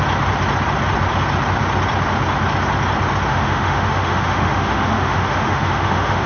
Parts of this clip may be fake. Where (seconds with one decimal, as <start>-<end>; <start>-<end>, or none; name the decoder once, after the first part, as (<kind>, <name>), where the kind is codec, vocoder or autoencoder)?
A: 3.3-6.3 (autoencoder, DAC-VAE)